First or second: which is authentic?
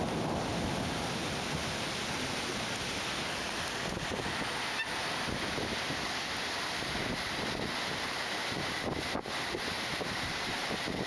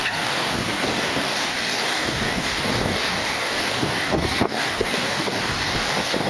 first